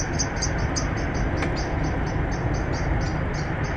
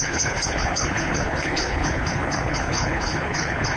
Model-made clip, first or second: second